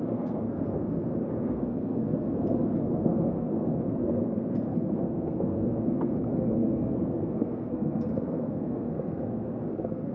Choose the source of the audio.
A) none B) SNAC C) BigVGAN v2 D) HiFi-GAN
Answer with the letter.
B